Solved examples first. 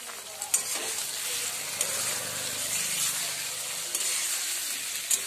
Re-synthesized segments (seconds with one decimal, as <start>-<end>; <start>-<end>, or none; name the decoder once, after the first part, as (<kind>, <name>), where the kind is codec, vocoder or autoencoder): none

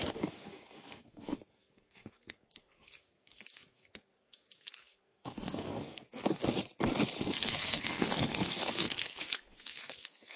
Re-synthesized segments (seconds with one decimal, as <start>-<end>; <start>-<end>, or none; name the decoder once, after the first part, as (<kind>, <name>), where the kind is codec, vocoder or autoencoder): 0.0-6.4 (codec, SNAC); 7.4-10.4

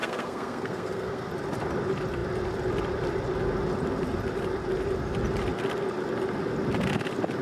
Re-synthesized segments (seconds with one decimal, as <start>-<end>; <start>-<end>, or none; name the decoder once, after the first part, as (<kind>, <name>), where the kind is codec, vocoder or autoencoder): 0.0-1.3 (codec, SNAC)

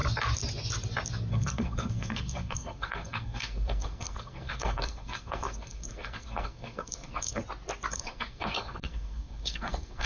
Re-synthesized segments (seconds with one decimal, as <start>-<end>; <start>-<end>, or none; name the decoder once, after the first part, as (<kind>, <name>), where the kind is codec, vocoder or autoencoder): 1.3-7.4 (codec, SNAC); 7.9-10.1

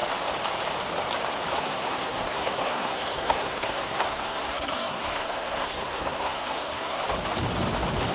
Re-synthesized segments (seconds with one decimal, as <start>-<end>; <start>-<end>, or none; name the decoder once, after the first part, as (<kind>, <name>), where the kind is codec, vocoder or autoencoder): 1.6-7.0 (codec, SNAC)